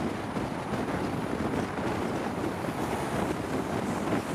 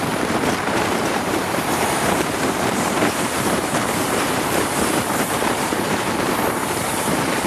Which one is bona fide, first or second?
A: first